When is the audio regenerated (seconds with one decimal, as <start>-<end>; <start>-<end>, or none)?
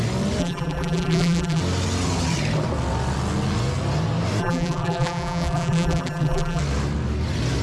0.4-1.6; 4.4-6.6